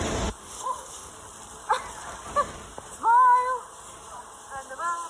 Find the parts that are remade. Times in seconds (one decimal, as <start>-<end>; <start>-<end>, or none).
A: 0.4-1.1